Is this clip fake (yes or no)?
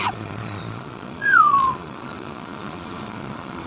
yes